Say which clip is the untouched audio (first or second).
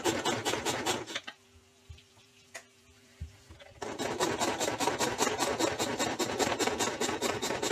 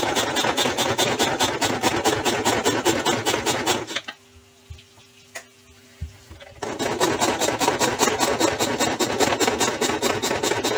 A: second